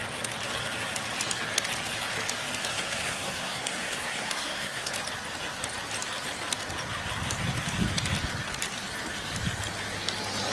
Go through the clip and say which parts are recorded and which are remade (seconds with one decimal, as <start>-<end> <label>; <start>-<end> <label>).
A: 0.0-2.7 recorded; 2.7-4.9 remade; 4.9-10.5 recorded